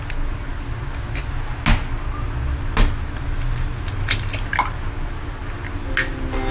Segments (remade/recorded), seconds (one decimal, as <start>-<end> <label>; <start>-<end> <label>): 0.0-6.5 recorded